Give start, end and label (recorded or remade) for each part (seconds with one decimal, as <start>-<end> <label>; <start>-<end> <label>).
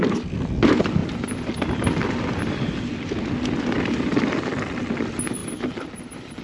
0.0-5.4 recorded; 5.4-6.4 remade